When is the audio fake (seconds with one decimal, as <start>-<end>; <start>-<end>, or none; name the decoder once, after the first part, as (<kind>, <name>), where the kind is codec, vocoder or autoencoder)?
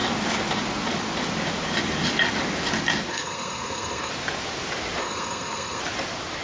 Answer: 3.1-4.1 (codec, SNAC); 5.0-5.8